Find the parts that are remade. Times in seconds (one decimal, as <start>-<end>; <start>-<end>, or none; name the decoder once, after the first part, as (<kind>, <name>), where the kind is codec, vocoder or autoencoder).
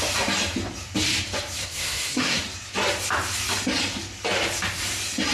1.6-2.4 (codec, SNAC)